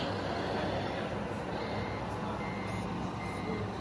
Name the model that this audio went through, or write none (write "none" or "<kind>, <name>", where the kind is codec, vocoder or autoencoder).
none